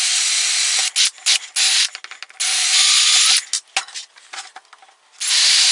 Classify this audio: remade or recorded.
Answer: recorded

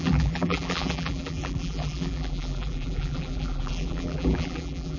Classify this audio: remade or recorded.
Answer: remade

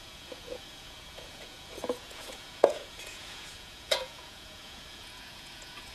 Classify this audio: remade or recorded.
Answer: remade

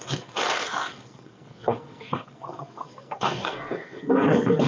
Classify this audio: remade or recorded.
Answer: remade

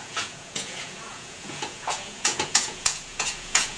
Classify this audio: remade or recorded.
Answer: remade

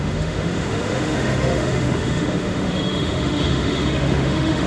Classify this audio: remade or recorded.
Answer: remade